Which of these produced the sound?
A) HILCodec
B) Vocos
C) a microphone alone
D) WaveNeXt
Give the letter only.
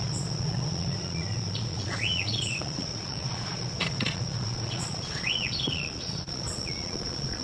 B